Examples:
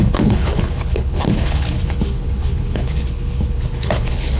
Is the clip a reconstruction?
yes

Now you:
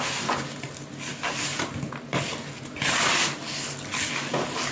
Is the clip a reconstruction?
no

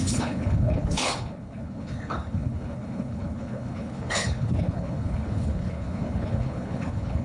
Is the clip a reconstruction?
yes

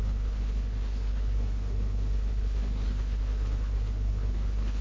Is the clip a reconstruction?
yes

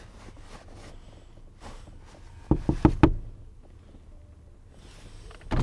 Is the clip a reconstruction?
no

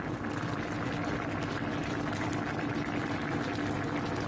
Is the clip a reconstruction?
no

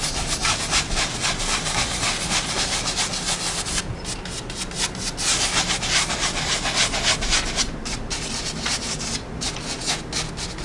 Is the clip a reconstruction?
no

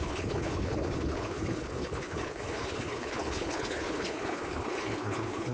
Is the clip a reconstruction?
yes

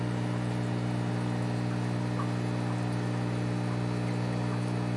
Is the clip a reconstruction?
no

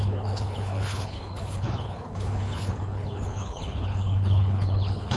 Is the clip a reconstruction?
yes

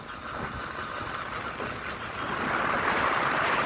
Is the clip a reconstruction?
no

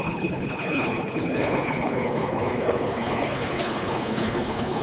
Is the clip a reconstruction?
yes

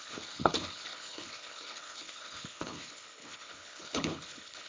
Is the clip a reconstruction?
yes